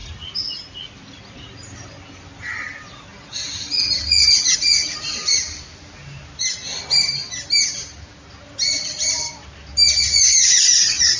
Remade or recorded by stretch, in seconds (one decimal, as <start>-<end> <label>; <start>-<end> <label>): 0.0-11.2 recorded